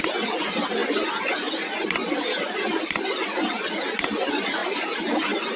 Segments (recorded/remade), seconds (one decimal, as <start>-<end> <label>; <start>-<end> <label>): 0.0-4.6 recorded; 4.6-5.6 remade

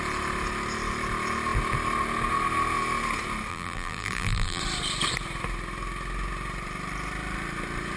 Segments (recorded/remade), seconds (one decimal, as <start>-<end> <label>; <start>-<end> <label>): 0.0-3.5 recorded; 3.5-4.6 remade; 4.6-8.0 recorded

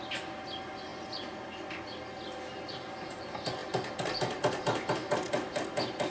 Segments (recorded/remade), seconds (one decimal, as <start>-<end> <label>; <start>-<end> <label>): 0.0-6.1 recorded